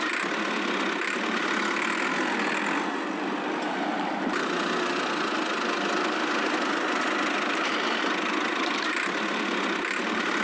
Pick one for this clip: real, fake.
real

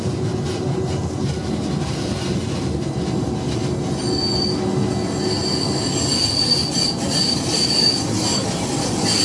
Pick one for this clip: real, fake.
real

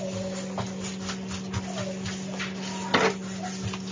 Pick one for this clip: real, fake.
real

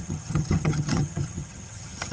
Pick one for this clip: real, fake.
fake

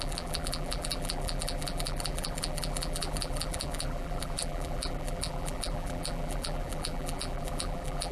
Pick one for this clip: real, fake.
fake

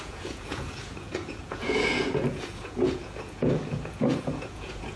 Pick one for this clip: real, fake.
fake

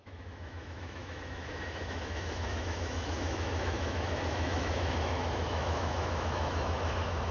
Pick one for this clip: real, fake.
fake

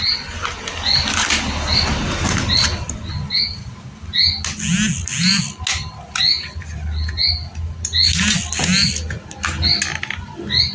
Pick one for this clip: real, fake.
real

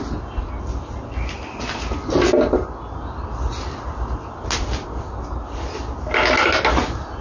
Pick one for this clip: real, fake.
real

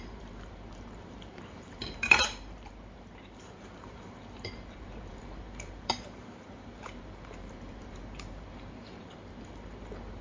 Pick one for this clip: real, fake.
fake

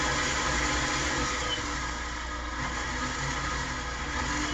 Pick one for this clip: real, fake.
real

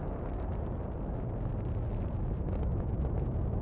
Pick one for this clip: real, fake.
real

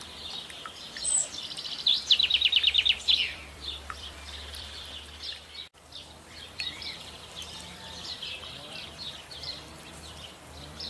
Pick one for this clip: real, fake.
fake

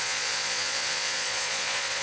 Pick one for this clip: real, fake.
fake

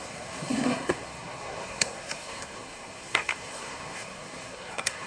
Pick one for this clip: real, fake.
fake